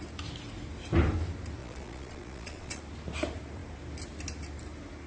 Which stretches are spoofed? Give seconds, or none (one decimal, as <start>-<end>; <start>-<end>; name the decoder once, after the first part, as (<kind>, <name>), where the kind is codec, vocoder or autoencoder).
1.6-2.8 (vocoder, Vocos)